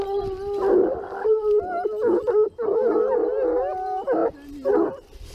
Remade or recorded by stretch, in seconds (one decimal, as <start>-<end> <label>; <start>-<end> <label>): 0.0-0.8 recorded; 0.8-1.6 remade; 1.6-5.3 recorded